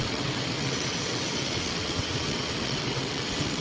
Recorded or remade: remade